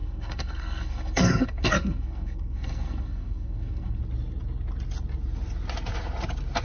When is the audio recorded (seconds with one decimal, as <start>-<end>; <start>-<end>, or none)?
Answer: 4.0-6.6